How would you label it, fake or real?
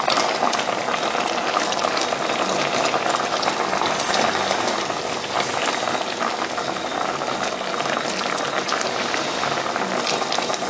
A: real